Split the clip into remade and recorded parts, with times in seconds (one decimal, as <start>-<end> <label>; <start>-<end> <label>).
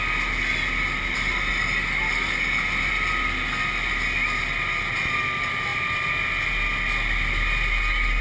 0.0-8.2 recorded